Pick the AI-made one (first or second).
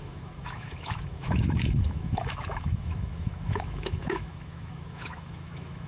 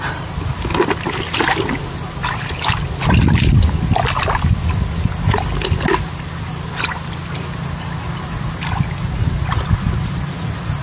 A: first